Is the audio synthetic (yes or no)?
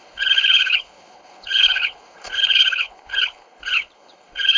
yes